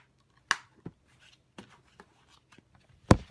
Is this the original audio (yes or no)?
yes